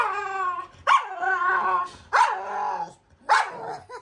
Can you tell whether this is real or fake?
real